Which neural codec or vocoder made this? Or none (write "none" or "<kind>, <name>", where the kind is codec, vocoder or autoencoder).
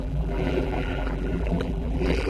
vocoder, BigVGAN v2